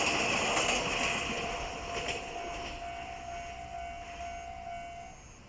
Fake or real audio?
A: real